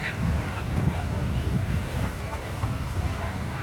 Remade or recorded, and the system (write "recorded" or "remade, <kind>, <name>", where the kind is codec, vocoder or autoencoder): remade, codec, DAC